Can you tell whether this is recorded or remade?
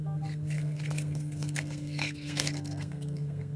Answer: remade